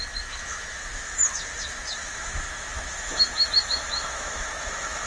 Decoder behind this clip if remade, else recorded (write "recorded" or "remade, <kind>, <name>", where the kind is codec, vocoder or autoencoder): remade, autoencoder, DAC-VAE